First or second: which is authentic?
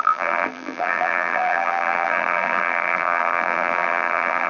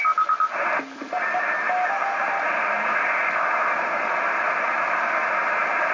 second